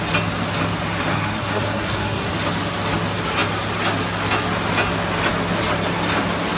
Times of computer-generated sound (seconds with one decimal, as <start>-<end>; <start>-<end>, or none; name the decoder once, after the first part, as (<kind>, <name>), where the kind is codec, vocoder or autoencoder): 1.1-2.3 (codec, SNAC)